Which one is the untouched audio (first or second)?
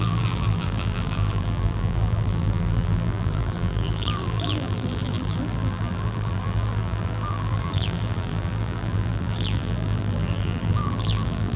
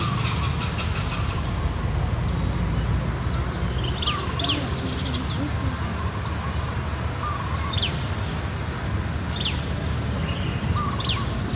second